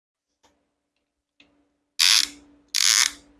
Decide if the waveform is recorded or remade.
recorded